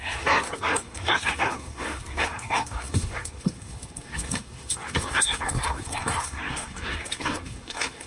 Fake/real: fake